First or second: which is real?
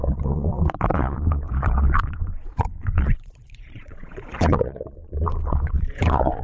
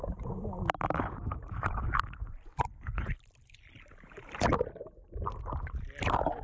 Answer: second